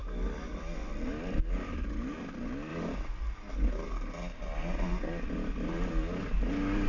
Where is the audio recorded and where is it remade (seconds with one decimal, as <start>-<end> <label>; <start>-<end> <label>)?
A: 0.0-6.9 recorded